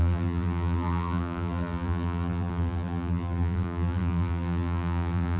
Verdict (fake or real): fake